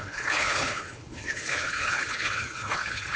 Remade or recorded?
remade